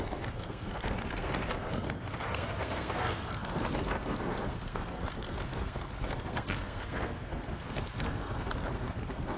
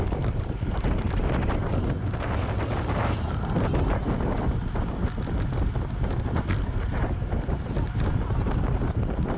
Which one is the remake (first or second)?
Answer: first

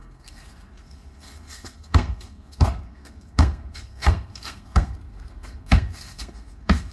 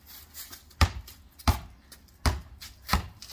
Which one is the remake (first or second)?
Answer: first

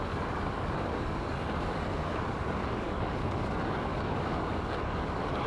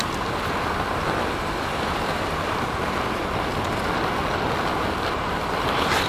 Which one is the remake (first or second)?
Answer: first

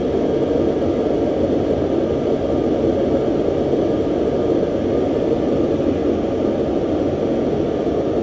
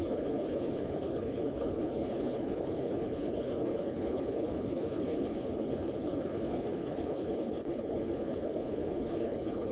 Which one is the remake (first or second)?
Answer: second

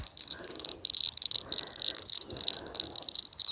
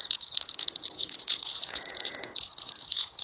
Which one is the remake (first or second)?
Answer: second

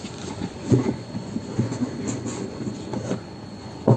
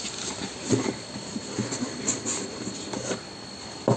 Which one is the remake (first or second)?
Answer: first